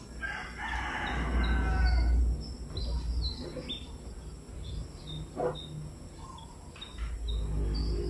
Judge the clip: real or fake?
real